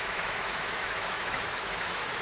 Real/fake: fake